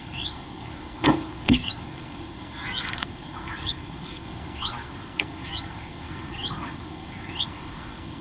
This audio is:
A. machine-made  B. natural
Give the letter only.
A